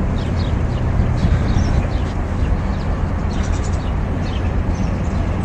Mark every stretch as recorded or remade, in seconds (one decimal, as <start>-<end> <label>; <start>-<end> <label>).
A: 0.0-1.2 recorded; 1.2-1.8 remade; 1.8-2.7 recorded; 2.7-5.0 remade; 5.0-5.4 recorded